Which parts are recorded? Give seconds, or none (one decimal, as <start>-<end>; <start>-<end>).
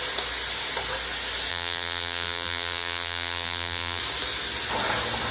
0.0-1.5; 4.0-5.3